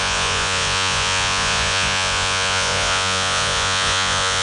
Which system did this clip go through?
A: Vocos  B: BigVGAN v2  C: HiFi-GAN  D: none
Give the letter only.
A